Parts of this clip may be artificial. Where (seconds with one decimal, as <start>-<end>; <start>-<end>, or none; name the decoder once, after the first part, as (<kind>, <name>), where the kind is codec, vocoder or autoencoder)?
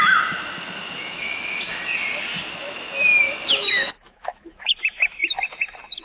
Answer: 0.0-1.3 (autoencoder, DAC-VAE); 2.5-5.2